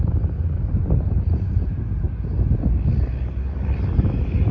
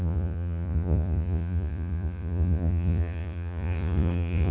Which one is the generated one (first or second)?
second